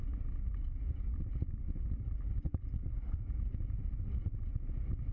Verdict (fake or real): real